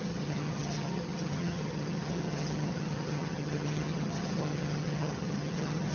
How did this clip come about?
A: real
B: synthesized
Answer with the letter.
B